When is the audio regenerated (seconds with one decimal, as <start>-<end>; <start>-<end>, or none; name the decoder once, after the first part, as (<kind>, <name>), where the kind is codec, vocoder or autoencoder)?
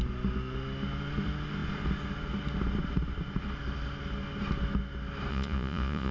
5.3-6.1 (vocoder, Vocos)